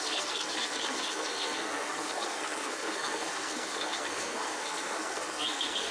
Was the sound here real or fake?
fake